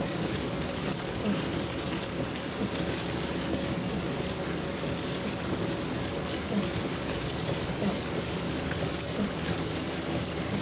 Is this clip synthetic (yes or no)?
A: yes